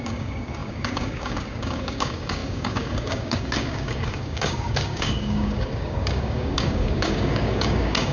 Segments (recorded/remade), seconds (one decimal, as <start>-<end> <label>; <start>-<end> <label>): 0.0-8.1 remade